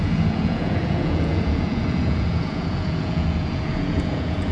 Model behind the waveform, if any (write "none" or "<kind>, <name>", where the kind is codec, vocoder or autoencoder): vocoder, Vocos